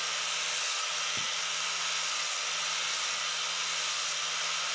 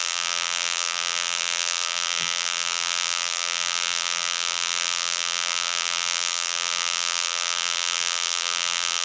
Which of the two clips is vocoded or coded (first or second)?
second